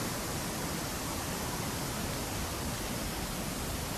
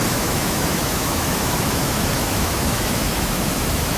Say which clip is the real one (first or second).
first